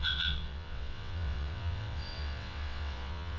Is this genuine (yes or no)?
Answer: no